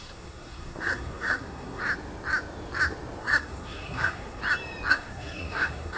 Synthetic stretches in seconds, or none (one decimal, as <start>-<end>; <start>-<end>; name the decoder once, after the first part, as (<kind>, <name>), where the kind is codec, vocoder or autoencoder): 0.0-1.8 (codec, SNAC); 3.2-4.4; 4.9-6.0